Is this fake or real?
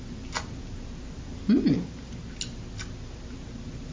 real